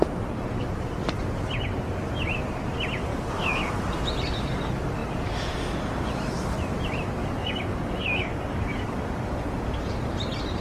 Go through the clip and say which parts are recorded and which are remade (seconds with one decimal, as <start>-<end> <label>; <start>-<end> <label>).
0.0-3.1 recorded; 3.1-3.7 remade; 3.7-7.2 recorded; 7.2-9.4 remade; 9.4-10.6 recorded